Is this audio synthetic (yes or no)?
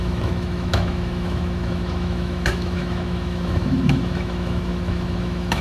yes